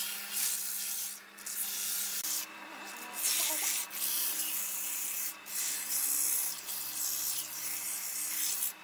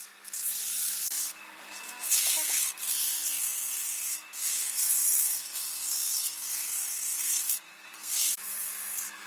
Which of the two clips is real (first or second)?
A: first